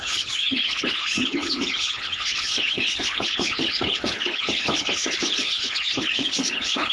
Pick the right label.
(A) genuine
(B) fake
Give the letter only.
B